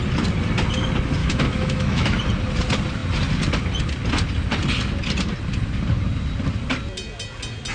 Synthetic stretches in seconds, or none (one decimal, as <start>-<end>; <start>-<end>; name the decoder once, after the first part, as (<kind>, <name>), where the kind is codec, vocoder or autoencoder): 1.2-2.2 (autoencoder, DAC-VAE)